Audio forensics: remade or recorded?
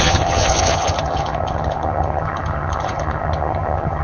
remade